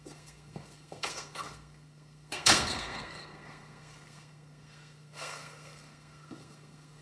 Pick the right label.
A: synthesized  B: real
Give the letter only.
A